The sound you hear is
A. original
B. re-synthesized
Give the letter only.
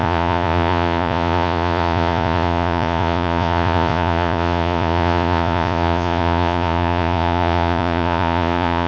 B